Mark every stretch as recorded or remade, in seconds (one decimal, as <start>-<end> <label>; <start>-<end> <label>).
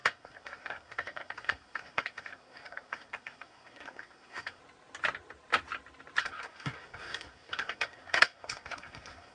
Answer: 0.0-4.6 remade; 4.6-6.2 recorded; 6.2-9.3 remade